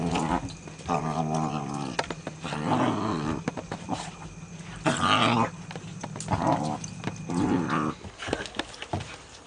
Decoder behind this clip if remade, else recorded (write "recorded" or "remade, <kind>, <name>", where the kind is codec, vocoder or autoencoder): recorded